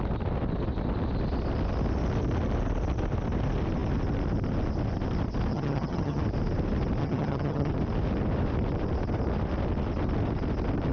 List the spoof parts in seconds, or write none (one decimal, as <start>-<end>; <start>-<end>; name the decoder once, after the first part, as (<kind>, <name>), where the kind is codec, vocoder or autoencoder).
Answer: 5.5-6.2 (vocoder, HiFi-GAN); 7.0-7.7